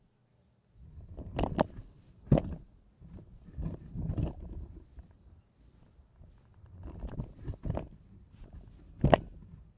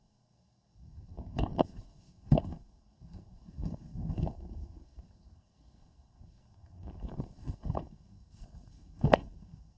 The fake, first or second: second